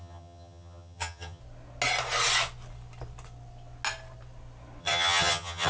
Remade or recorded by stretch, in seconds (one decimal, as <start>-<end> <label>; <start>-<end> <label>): 0.0-1.4 remade; 1.4-4.8 recorded; 4.8-5.7 remade